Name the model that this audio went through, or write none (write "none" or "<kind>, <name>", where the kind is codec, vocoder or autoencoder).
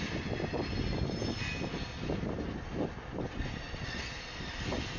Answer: none